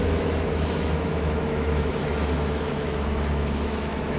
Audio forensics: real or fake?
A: fake